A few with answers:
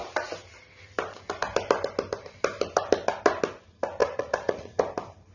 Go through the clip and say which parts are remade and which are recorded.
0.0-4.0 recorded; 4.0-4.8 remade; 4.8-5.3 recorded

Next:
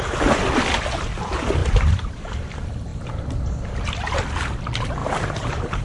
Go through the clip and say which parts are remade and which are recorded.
0.0-1.6 recorded; 1.6-2.3 remade; 2.3-5.0 recorded; 5.0-5.8 remade

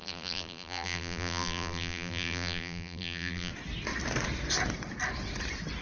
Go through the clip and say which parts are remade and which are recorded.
0.0-3.5 remade; 3.5-5.8 recorded

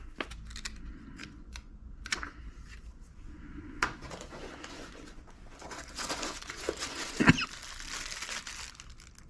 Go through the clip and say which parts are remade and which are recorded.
0.0-1.2 recorded; 1.2-2.4 remade; 2.4-2.9 recorded; 2.9-7.2 remade; 7.2-9.3 recorded

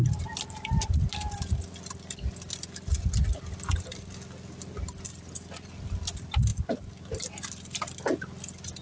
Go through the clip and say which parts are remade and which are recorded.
0.0-8.8 recorded

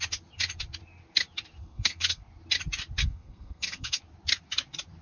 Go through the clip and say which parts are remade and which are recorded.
0.0-1.6 recorded; 1.6-2.2 remade; 2.2-3.0 recorded; 3.0-4.0 remade; 4.0-5.0 recorded